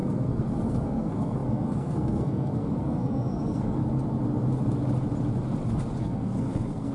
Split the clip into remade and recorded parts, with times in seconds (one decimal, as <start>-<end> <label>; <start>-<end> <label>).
0.0-3.8 remade; 3.8-6.0 recorded; 6.0-6.9 remade